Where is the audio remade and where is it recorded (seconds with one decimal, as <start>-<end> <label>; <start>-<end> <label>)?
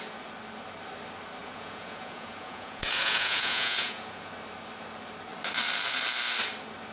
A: 0.0-1.4 recorded; 1.4-4.3 remade; 4.3-6.9 recorded